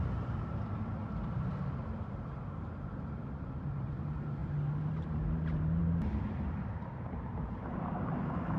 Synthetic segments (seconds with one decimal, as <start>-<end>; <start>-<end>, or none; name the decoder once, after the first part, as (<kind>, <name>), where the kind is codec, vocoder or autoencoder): 0.0-1.0 (vocoder, BigVGAN v2); 1.6-8.6